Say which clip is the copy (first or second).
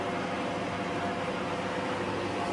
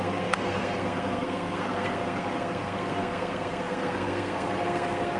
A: second